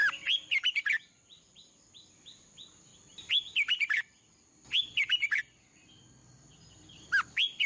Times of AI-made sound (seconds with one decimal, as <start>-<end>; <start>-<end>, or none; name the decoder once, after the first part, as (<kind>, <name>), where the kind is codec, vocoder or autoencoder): 0.0-2.5 (vocoder, BigVGAN v2); 2.9-5.4; 6.2-7.7